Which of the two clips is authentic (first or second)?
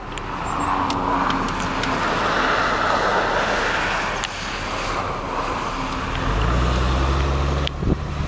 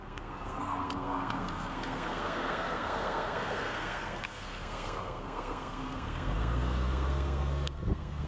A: first